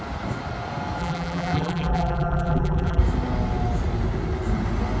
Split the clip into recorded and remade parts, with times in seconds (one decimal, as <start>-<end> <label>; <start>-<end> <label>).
0.0-1.0 recorded; 1.0-3.0 remade; 3.0-5.0 recorded